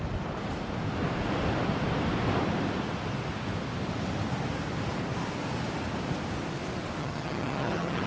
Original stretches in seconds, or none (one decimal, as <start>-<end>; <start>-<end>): 0.0-7.0